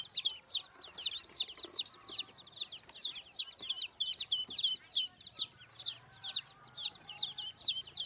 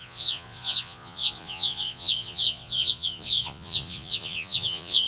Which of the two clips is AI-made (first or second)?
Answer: second